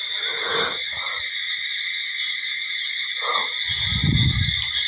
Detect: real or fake real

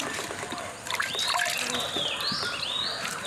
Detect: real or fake real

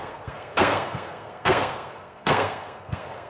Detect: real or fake fake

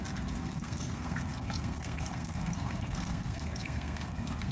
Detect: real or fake fake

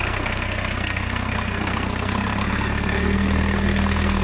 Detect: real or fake fake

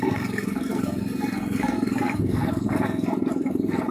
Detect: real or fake fake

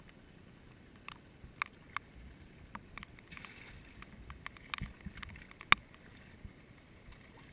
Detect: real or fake real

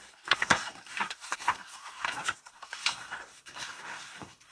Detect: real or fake fake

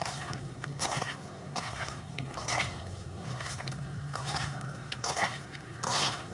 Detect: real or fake fake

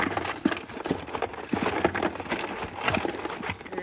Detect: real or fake real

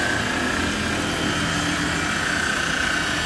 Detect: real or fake real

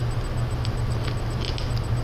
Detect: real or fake real